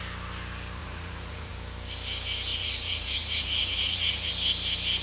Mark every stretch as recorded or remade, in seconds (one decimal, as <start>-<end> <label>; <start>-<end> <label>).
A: 0.0-0.8 recorded; 0.8-1.5 remade; 1.5-2.5 recorded; 2.5-4.3 remade; 4.3-5.0 recorded